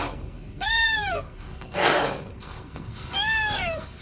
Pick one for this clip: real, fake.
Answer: fake